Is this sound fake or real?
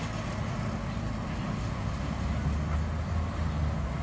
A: real